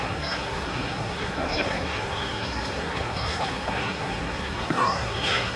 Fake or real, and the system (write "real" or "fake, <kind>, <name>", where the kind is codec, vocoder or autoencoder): fake, codec, SNAC